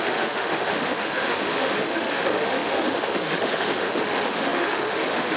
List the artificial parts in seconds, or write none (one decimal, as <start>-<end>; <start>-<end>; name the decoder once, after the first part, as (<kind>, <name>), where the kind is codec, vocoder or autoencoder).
0.0-5.4 (autoencoder, DAC-VAE)